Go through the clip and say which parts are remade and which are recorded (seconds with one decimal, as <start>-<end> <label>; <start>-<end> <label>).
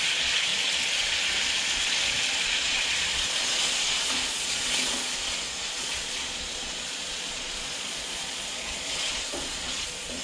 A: 0.0-0.5 remade; 0.5-2.3 recorded; 2.3-10.2 remade